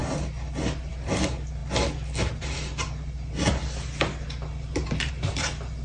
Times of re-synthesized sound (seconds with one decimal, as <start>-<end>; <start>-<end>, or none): none